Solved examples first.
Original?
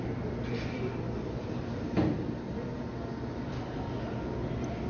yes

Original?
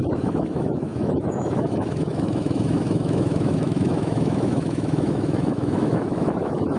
no